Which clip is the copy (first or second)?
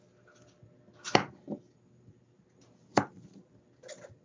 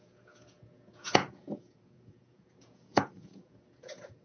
second